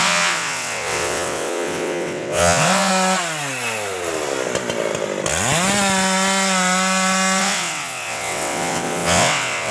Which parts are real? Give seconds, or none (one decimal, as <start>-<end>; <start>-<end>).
2.9-7.4